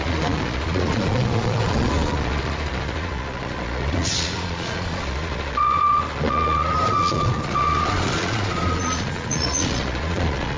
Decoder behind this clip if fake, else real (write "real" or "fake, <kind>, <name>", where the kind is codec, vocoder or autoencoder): fake, vocoder, Vocos